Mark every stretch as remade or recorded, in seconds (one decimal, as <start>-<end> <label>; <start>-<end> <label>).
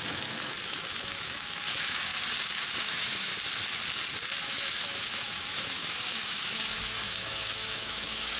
0.0-2.1 remade; 2.1-2.8 recorded; 2.8-3.3 remade; 3.3-4.4 recorded; 4.4-8.4 remade